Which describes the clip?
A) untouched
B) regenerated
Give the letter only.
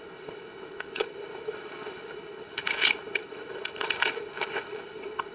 B